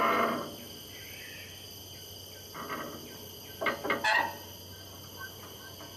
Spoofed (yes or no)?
no